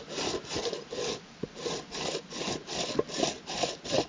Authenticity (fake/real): real